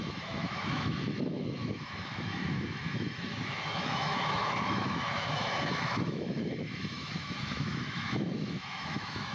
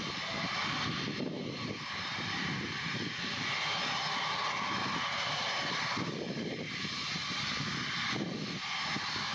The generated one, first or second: first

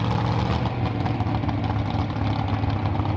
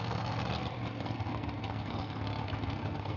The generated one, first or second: second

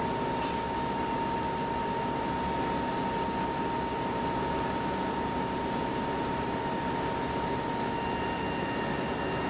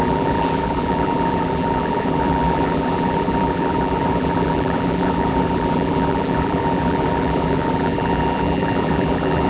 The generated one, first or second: second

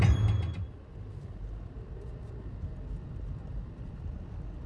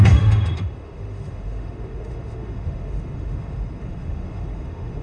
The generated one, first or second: second